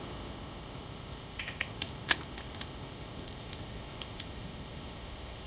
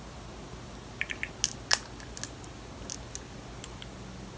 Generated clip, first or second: first